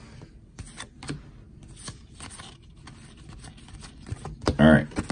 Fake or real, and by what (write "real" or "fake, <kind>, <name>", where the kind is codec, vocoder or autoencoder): real